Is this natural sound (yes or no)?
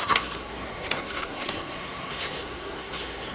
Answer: no